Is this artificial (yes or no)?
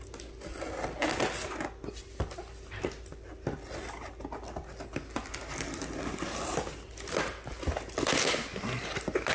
no